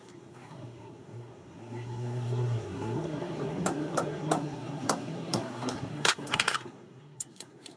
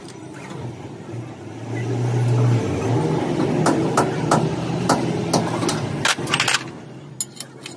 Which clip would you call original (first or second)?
second